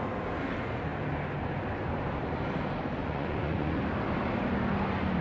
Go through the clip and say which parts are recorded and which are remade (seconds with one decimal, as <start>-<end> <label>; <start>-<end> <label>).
0.0-3.0 recorded; 3.0-3.8 remade; 3.8-5.2 recorded